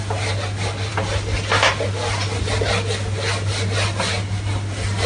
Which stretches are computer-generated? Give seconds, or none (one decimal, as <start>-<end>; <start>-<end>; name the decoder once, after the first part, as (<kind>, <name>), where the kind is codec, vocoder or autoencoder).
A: none